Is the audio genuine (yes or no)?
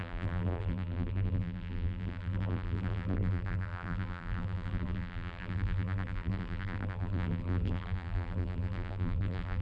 no